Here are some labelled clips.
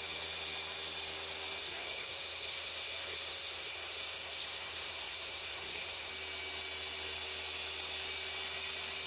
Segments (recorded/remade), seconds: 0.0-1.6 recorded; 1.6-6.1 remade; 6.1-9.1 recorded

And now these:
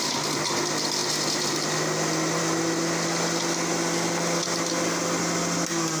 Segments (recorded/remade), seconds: 0.0-6.0 recorded

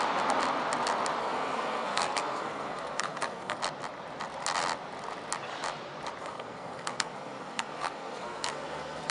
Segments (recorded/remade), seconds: 0.0-1.2 recorded; 1.2-3.6 remade; 3.6-6.2 recorded; 6.2-9.1 remade

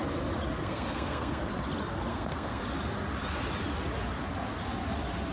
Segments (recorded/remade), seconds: 0.0-0.6 recorded; 0.6-1.4 remade; 1.4-2.1 recorded; 2.1-2.6 remade; 2.6-5.3 recorded

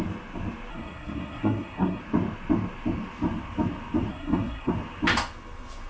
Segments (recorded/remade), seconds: 0.0-0.7 recorded; 0.7-2.0 remade; 2.0-4.1 recorded; 4.1-4.7 remade; 4.7-5.9 recorded

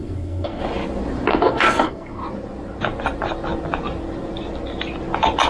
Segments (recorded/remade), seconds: 0.0-0.6 remade; 0.6-1.3 recorded; 1.3-2.2 remade; 2.2-5.5 recorded

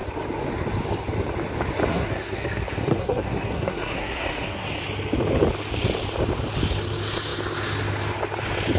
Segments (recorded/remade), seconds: 0.0-1.9 recorded; 1.9-4.7 remade; 4.7-8.8 recorded